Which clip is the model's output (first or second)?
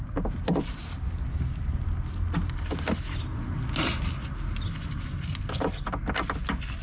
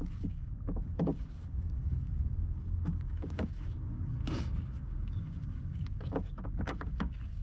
second